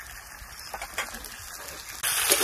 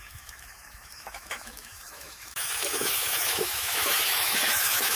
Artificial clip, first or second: second